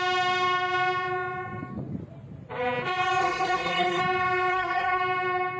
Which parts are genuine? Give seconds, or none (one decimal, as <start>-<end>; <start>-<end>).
0.0-3.2; 4.0-4.5; 5.0-5.6